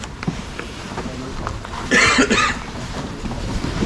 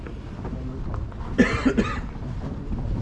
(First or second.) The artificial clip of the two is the first